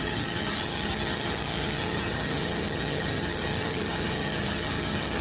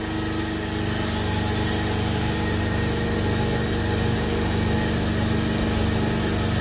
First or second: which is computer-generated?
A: first